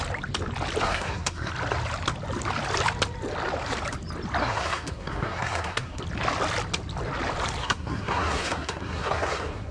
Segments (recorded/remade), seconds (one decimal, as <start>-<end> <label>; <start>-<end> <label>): 0.0-0.8 recorded; 0.8-1.5 remade; 1.5-4.4 recorded; 4.4-6.0 remade; 6.0-7.6 recorded; 7.6-9.7 remade